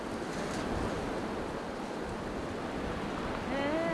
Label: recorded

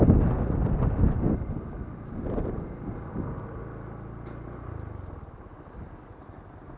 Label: recorded